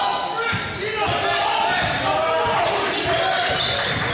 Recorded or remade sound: recorded